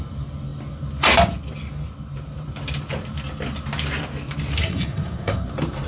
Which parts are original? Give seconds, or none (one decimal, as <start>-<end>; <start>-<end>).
0.0-4.6; 5.5-5.9